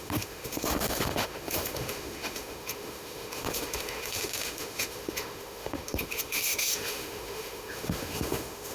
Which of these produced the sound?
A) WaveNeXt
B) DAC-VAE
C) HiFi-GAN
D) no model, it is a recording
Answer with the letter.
B